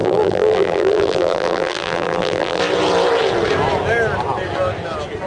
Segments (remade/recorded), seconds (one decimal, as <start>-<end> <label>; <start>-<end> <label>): 0.0-2.6 remade; 2.6-5.3 recorded